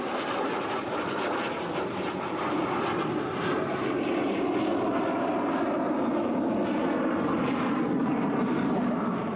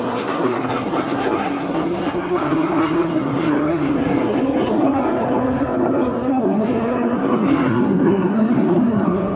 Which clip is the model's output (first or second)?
second